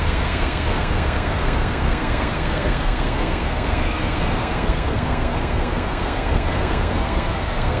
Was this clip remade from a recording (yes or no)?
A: yes